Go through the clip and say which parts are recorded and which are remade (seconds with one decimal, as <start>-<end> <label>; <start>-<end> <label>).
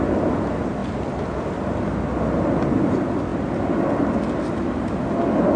0.0-5.6 recorded